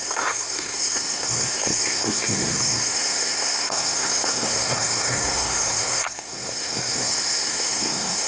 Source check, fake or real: fake